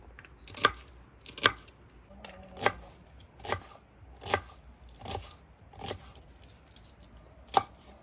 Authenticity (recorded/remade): recorded